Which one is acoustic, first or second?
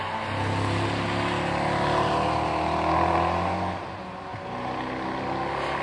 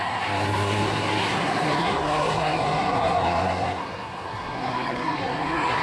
first